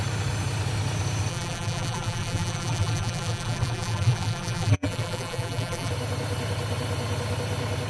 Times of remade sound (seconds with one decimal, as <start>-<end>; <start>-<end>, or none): 1.3-5.9

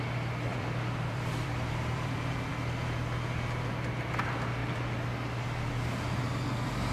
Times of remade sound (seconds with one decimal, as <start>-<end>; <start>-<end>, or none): 0.5-2.5

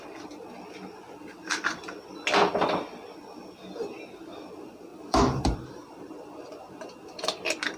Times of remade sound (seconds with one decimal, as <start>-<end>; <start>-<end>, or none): 4.9-6.4

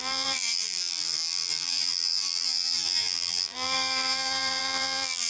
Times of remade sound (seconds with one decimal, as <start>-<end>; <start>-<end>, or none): 0.0-5.3